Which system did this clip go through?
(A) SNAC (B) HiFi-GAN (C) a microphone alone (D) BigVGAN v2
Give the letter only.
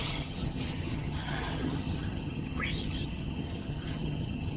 B